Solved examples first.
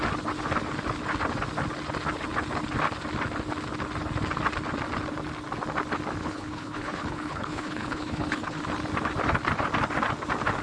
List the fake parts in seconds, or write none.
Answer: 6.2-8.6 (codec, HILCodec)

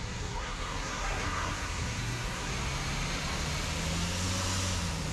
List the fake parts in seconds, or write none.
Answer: 0.0-2.5 (codec, SNAC)

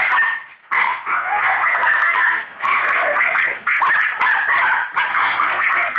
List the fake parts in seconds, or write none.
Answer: 0.6-3.8 (codec, SNAC); 5.1-6.0

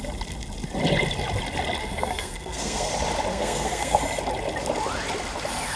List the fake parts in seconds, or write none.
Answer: 1.8-2.9 (codec, SNAC); 3.3-4.0

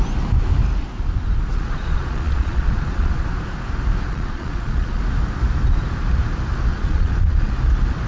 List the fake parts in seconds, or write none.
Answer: 1.5-3.2 (vocoder, Vocos); 4.1-5.0; 6.7-7.5

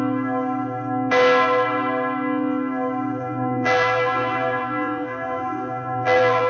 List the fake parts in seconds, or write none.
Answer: 3.2-6.5 (vocoder, BigVGAN v2)